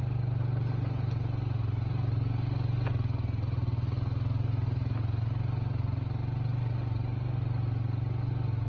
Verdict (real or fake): real